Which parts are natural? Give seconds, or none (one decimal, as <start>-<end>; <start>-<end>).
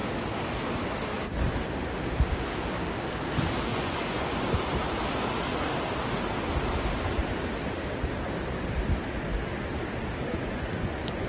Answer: 0.0-3.7; 4.6-10.3